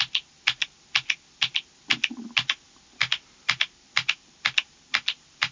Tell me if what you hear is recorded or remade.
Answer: recorded